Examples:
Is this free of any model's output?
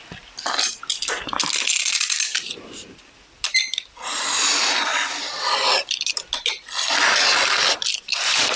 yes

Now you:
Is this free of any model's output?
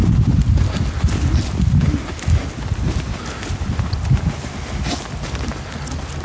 yes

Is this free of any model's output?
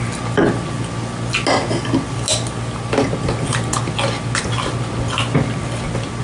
yes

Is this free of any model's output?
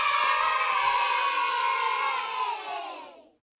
no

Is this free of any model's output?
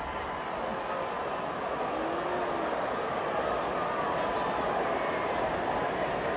yes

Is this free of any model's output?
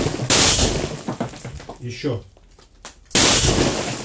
yes